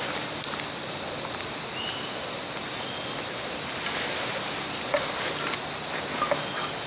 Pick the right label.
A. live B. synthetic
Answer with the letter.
A